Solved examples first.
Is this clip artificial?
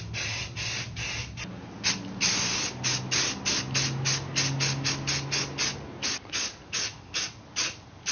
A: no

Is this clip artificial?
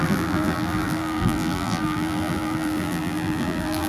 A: yes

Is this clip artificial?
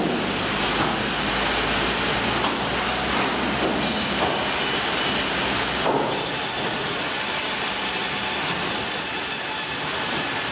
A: no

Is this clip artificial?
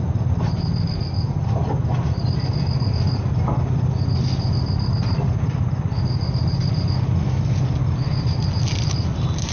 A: no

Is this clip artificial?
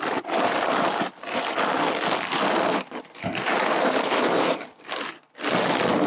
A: no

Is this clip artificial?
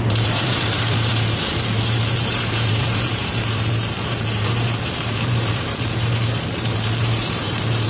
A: yes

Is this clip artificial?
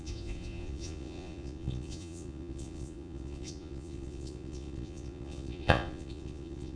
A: yes